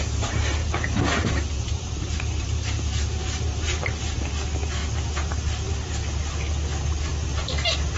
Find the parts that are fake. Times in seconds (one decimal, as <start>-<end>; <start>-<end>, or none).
0.6-4.3